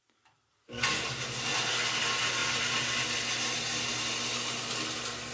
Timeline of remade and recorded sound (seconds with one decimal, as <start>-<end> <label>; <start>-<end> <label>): 0.0-5.3 recorded